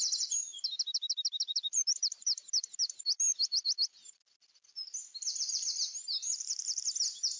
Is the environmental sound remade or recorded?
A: remade